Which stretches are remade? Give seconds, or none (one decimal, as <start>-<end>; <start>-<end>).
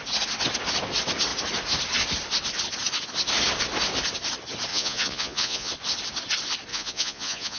4.7-5.7; 6.7-7.6